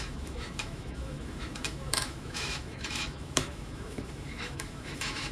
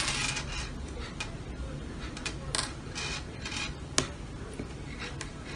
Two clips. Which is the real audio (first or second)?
second